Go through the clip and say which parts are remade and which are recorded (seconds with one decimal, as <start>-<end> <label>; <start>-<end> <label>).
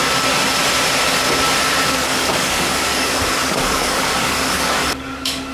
0.0-1.8 recorded; 1.8-5.5 remade